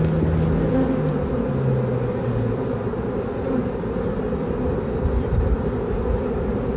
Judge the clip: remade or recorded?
recorded